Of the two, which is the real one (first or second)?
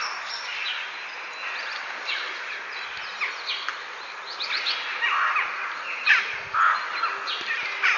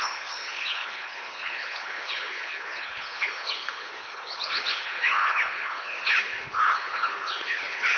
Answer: first